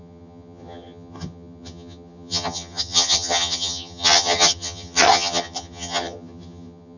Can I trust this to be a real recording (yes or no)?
no